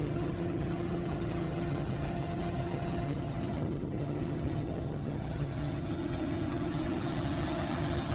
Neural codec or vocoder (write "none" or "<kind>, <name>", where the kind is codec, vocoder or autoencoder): vocoder, HiFi-GAN